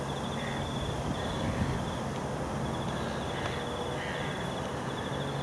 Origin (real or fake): real